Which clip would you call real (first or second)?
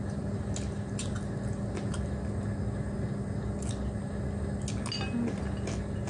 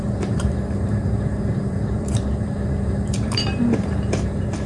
first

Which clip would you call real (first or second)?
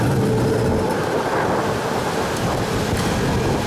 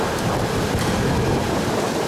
first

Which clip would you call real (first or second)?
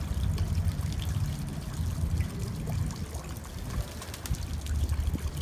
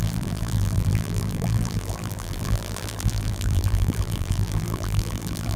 first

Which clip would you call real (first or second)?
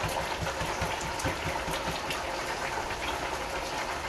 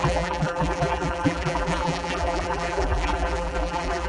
first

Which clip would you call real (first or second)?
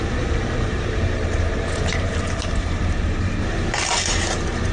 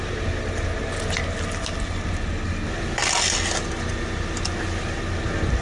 second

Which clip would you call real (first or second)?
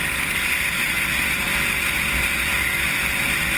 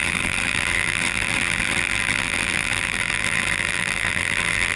first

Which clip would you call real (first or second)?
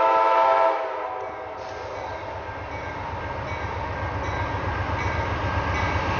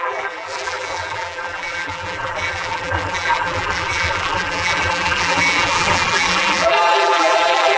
first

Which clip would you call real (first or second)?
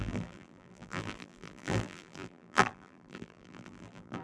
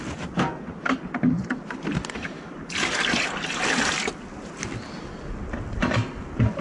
second